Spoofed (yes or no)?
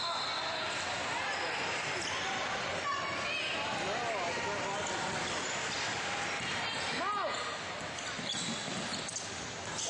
no